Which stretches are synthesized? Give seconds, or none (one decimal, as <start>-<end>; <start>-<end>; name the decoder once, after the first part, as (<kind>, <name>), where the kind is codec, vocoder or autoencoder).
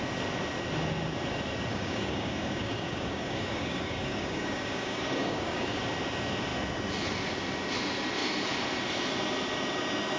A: 1.7-5.8 (codec, DAC)